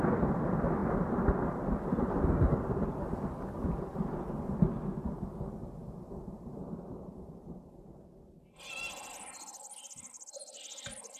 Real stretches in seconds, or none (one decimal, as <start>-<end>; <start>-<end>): 0.0-5.6; 7.9-11.2